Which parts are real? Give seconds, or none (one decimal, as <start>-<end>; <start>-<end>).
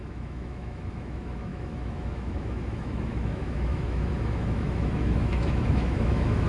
none